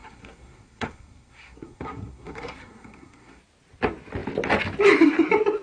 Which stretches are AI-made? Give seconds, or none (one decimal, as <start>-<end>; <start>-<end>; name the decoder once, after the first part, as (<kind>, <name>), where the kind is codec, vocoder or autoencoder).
0.0-3.4 (codec, SNAC)